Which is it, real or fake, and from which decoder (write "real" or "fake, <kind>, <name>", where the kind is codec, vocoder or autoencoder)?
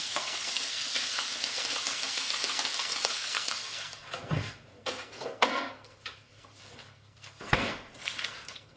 fake, codec, SNAC